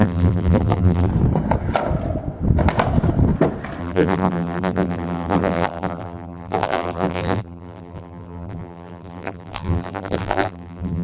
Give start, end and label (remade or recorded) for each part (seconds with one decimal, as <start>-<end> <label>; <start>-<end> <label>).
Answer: 0.0-1.1 remade; 1.1-3.8 recorded; 3.8-11.0 remade